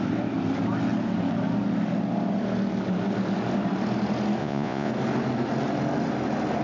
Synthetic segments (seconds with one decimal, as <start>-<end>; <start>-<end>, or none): 4.4-4.9